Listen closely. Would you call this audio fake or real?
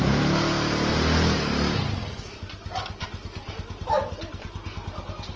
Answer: real